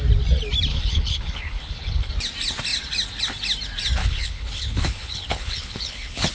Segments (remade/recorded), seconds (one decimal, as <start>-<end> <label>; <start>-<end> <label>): 0.0-0.7 recorded; 0.7-2.1 remade; 2.1-4.0 recorded; 4.0-6.3 remade